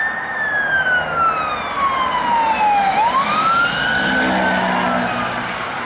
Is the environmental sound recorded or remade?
recorded